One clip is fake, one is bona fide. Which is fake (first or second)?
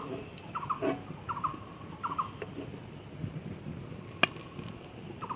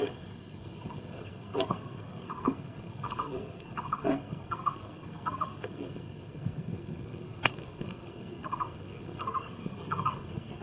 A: second